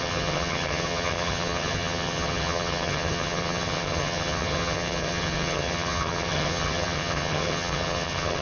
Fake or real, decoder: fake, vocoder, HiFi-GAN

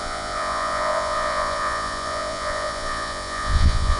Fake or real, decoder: fake, vocoder, Vocos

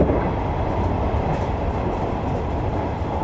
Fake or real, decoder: real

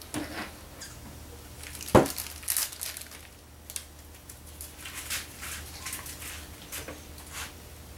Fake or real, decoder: real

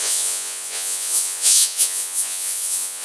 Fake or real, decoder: fake, vocoder, Vocos